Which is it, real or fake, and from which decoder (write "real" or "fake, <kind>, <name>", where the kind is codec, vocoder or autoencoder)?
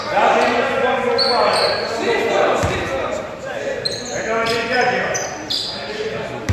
real